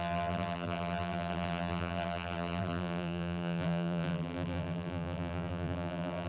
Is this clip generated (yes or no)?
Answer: yes